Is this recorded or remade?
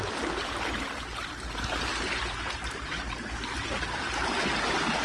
recorded